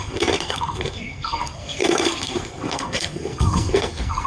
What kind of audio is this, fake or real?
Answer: fake